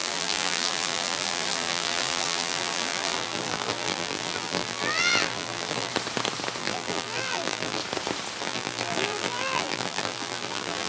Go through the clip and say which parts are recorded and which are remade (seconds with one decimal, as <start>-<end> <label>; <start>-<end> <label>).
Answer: 0.0-5.9 remade; 5.9-6.6 recorded; 6.6-7.8 remade; 7.8-8.4 recorded; 8.4-10.9 remade